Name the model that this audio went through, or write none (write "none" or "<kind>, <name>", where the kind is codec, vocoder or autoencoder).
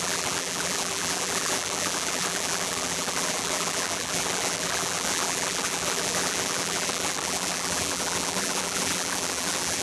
vocoder, BigVGAN v2